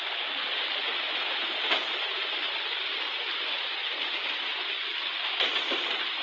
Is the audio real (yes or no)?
yes